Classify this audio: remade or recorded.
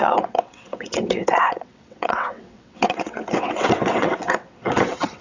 remade